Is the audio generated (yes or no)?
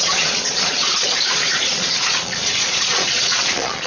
yes